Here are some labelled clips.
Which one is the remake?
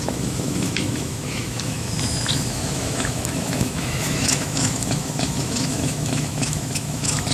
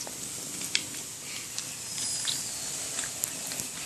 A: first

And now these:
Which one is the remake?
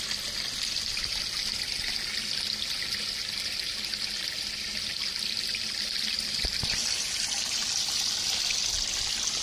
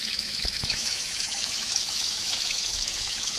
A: second